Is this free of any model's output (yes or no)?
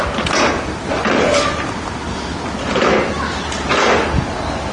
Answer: yes